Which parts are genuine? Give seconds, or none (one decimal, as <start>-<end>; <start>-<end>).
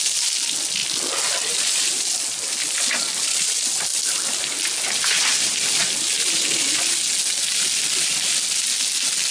0.0-9.3